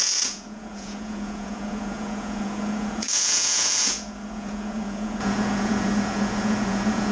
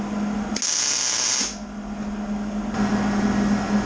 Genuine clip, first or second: second